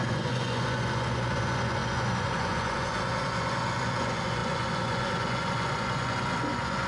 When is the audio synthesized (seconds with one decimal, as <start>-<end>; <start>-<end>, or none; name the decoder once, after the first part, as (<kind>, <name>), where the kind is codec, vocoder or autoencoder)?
0.0-6.9 (vocoder, Vocos)